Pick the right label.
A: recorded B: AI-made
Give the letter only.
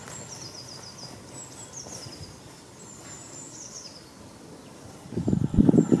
A